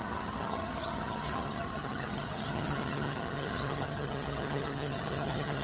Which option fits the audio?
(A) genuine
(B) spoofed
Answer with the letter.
B